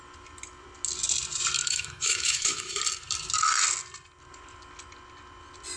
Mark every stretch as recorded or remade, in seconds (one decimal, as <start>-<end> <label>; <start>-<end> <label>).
0.0-1.6 recorded; 1.6-2.8 remade; 2.8-5.8 recorded